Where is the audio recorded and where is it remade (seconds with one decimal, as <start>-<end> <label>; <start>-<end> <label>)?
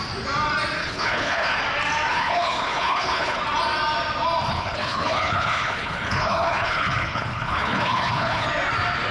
0.0-0.8 recorded; 0.8-1.6 remade; 1.6-2.1 recorded; 2.1-3.4 remade; 3.4-4.5 recorded; 4.5-8.5 remade; 8.5-9.1 recorded